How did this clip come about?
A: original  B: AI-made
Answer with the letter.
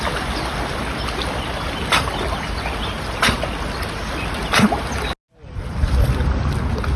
A